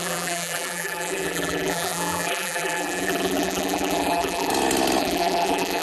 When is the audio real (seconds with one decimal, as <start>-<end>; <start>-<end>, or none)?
4.5-5.0